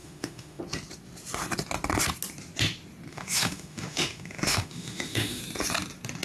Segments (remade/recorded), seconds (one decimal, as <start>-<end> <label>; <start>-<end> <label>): 0.0-0.6 remade; 0.6-3.1 recorded; 3.1-5.4 remade; 5.4-6.2 recorded